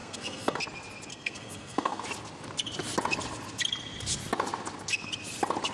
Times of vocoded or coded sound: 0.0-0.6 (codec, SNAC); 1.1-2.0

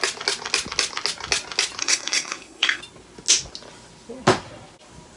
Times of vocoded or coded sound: 1.8-2.8 (codec, SNAC)

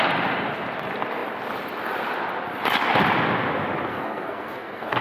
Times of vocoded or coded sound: 3.9-5.0 (codec, SNAC)

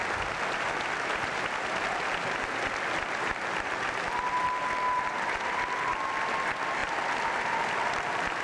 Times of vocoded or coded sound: none

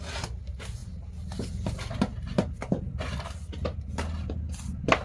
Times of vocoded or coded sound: none

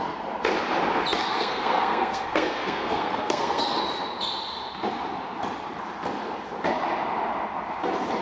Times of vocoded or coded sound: 1.2-3.8 (codec, SNAC)